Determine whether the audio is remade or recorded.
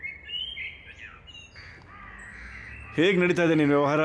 recorded